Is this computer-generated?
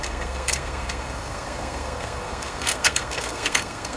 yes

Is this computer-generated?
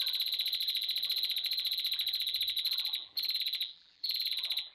yes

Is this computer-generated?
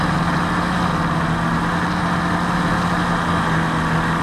no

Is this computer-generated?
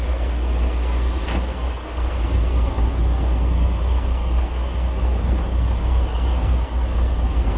yes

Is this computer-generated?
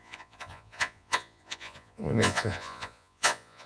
yes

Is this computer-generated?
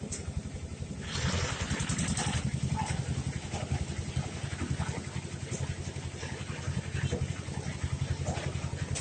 no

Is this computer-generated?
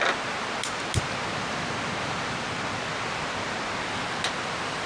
no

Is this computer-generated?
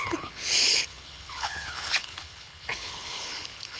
yes